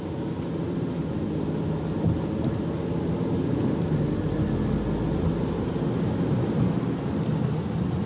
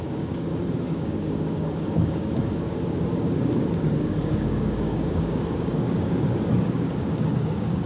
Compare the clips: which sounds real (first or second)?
first